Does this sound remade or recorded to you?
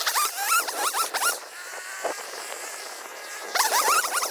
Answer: remade